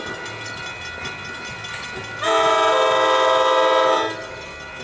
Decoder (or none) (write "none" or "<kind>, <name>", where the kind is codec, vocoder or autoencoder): none